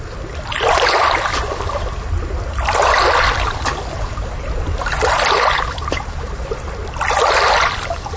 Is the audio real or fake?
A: real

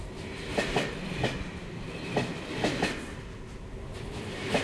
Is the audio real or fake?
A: real